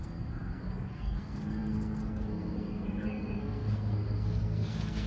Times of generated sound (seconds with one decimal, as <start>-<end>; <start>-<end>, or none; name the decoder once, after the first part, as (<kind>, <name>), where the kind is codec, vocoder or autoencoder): 0.0-5.1 (codec, SNAC)